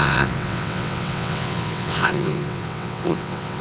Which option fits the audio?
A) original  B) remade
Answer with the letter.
B